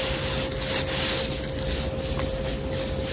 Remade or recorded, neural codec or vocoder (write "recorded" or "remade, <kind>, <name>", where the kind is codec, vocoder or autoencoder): recorded